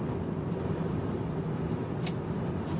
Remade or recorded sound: recorded